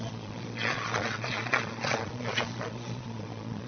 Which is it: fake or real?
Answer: fake